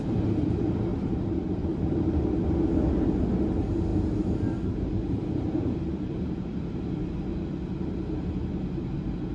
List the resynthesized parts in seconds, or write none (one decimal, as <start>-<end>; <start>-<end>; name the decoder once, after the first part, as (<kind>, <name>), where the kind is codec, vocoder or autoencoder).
0.9-2.2 (vocoder, BigVGAN v2); 3.9-6.8

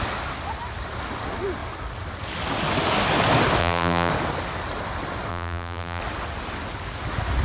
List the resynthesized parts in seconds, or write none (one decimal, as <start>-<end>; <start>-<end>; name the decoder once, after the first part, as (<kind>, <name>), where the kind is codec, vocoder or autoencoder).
3.6-4.1 (vocoder, BigVGAN v2); 5.3-6.0

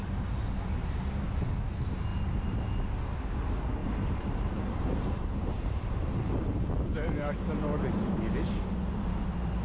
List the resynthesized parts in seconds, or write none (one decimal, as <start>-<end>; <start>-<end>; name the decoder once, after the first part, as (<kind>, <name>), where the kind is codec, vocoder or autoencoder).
2.1-2.6 (vocoder, BigVGAN v2); 3.8-7.5

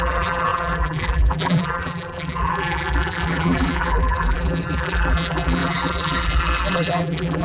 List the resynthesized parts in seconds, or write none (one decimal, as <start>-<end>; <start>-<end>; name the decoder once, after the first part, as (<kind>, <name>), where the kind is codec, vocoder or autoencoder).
0.0-7.4 (vocoder, BigVGAN v2)

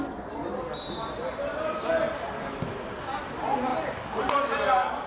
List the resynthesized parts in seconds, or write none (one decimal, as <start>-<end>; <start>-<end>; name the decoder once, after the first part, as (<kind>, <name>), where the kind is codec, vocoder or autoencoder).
3.7-4.4 (vocoder, BigVGAN v2)

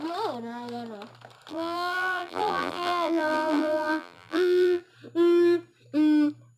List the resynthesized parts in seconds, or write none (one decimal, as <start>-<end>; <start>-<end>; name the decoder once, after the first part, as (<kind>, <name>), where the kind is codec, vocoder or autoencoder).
1.5-4.8 (vocoder, BigVGAN v2)

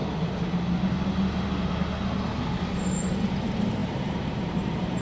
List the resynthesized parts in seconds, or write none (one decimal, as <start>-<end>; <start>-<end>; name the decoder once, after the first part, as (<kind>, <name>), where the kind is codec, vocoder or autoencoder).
3.0-5.0 (vocoder, BigVGAN v2)